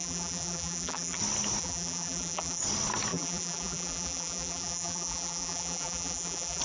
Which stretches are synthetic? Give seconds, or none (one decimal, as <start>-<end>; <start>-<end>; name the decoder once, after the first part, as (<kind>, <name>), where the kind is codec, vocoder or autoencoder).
0.0-1.2 (vocoder, BigVGAN v2); 1.6-2.6; 3.1-6.6